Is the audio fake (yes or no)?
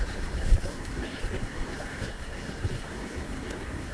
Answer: yes